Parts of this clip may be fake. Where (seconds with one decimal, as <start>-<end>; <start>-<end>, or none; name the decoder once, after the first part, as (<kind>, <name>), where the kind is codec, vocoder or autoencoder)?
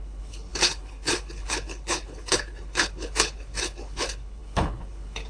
0.0-5.3 (codec, HILCodec)